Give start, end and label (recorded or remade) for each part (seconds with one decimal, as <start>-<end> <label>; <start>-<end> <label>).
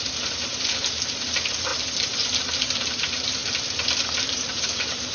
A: 0.0-3.4 remade; 3.4-4.2 recorded; 4.2-5.1 remade